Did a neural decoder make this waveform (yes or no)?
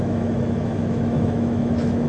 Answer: yes